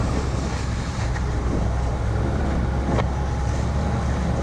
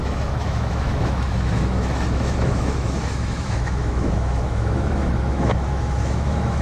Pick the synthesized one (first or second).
second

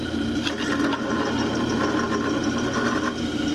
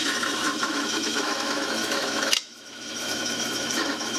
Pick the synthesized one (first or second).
second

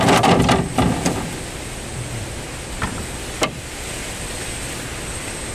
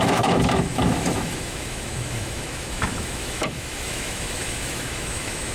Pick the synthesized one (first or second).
second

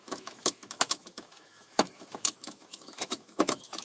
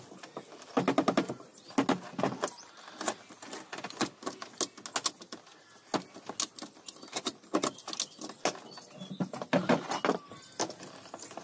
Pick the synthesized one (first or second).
first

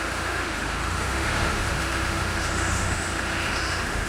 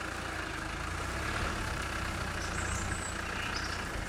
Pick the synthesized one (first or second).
first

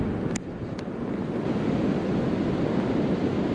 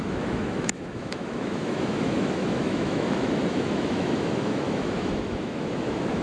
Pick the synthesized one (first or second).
second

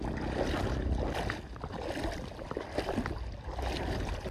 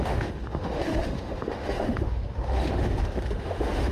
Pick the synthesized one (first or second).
second